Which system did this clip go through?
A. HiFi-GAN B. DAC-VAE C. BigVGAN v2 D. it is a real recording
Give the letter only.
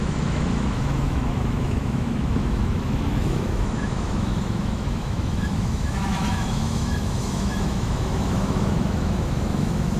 B